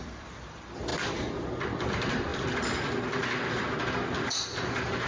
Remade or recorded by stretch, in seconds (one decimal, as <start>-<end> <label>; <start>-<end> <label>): 0.0-0.9 remade; 0.9-1.6 recorded; 1.6-2.3 remade; 2.3-5.1 recorded